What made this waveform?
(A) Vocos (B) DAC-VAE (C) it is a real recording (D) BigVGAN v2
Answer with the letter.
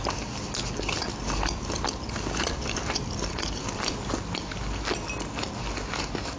C